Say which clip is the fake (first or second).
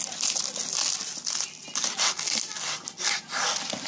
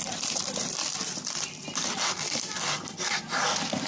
second